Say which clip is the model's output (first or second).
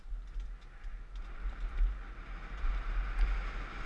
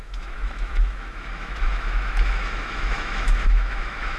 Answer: second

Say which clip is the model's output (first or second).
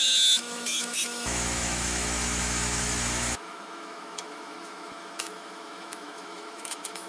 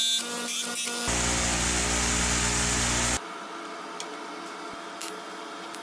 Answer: first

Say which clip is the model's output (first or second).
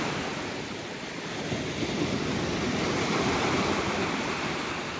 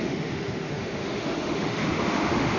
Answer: second